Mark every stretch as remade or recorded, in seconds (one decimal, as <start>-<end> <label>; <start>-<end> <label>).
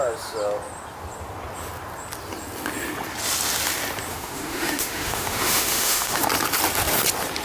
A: 0.0-4.1 recorded; 4.1-6.3 remade; 6.3-7.4 recorded